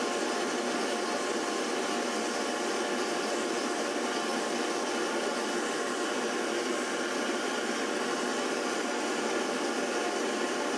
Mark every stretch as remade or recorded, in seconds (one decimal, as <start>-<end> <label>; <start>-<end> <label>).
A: 0.0-10.8 recorded